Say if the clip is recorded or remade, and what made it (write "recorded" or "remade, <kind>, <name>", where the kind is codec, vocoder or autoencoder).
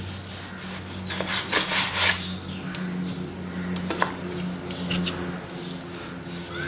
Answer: recorded